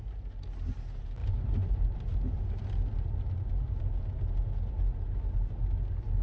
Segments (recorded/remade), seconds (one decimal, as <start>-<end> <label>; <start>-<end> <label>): 0.0-6.2 recorded